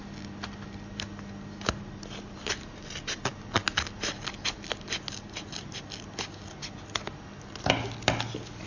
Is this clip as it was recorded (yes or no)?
yes